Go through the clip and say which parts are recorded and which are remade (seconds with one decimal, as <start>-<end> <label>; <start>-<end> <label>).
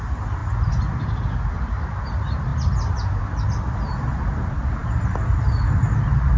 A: 0.0-6.4 recorded